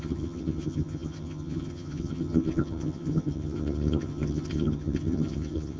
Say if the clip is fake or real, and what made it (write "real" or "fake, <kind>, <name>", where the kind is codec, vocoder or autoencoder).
fake, vocoder, HiFi-GAN